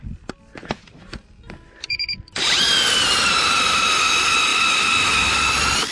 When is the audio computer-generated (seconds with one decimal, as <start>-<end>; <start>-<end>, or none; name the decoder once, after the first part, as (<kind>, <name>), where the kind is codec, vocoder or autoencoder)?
0.6-4.1 (vocoder, BigVGAN v2)